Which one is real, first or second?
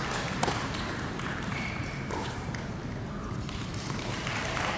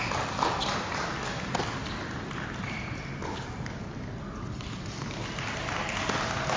second